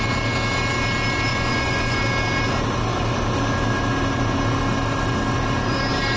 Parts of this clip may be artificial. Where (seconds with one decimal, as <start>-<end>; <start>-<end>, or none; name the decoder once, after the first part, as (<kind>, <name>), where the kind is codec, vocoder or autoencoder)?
1.3-2.0 (vocoder, Vocos)